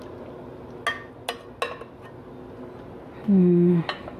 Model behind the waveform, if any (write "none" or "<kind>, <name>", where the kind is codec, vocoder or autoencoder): none